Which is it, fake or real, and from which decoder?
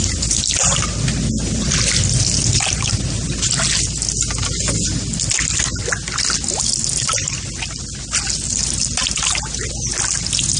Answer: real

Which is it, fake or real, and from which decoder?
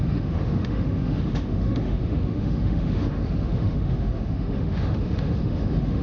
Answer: fake, autoencoder, DAC-VAE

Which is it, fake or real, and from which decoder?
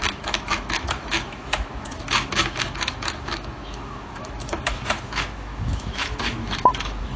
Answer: fake, autoencoder, DAC-VAE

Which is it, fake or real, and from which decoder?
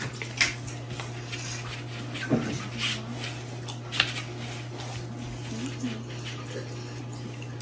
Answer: real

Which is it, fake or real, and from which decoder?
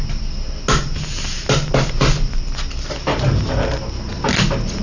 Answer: real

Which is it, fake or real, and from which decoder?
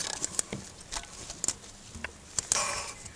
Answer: real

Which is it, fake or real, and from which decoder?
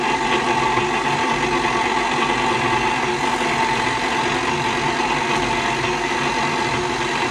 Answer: real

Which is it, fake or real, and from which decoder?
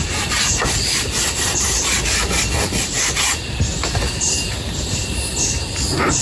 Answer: real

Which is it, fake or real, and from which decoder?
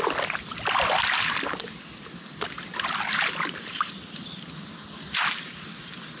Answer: real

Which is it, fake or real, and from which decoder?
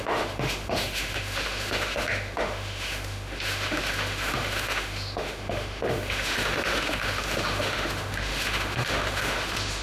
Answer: fake, autoencoder, DAC-VAE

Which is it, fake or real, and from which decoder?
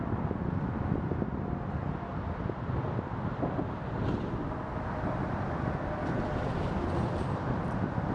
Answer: real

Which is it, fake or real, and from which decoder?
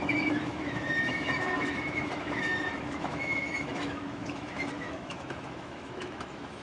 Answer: fake, autoencoder, DAC-VAE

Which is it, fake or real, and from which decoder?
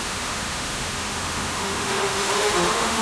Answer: fake, autoencoder, DAC-VAE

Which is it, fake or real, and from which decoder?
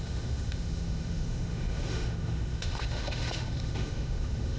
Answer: fake, autoencoder, DAC-VAE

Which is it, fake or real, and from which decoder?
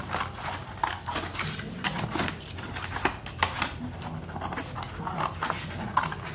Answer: real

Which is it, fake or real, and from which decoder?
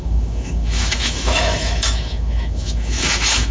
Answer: fake, autoencoder, DAC-VAE